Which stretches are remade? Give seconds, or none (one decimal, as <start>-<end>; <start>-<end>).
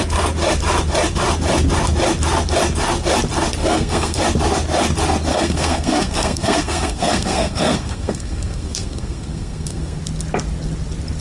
3.6-4.2; 5.3-10.0